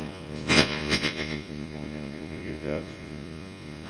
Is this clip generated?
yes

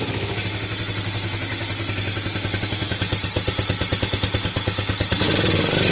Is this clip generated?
no